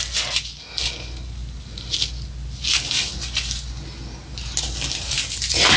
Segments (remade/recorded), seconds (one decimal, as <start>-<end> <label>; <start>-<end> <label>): 0.0-5.8 recorded